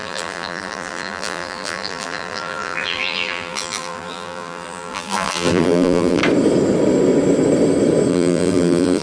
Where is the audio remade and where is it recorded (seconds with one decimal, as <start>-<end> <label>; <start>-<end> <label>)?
0.0-6.2 remade; 6.2-8.1 recorded; 8.1-9.0 remade

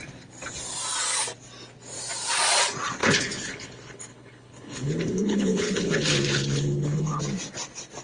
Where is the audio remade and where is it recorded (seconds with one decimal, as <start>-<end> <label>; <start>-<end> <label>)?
0.0-3.0 recorded; 3.0-7.2 remade; 7.2-8.0 recorded

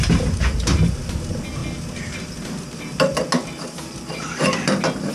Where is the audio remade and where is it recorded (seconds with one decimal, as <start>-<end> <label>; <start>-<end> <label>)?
0.0-1.6 remade; 1.6-5.1 recorded